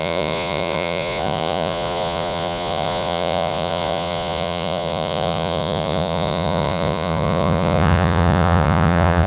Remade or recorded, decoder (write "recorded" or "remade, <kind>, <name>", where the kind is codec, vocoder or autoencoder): remade, vocoder, Vocos